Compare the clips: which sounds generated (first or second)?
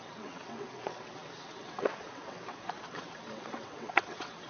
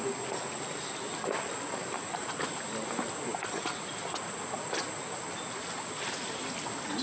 first